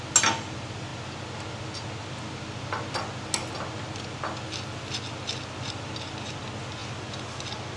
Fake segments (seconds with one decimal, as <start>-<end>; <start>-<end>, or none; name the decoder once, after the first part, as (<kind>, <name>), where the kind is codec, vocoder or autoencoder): none